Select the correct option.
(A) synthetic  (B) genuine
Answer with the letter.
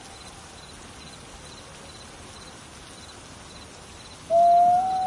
B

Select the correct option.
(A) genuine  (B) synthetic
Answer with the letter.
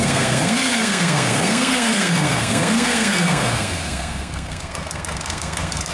B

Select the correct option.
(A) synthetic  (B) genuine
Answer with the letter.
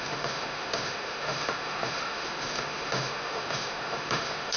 A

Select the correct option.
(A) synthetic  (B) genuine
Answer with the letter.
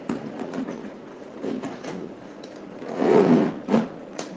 A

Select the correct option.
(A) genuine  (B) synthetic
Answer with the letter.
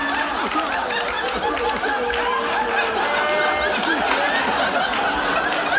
A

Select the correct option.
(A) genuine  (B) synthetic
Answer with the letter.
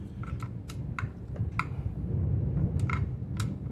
A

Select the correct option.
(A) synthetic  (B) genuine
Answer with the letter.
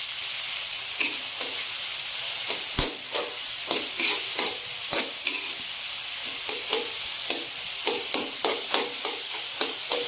B